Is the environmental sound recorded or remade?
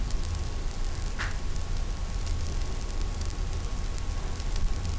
remade